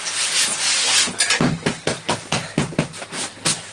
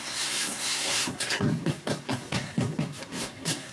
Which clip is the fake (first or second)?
second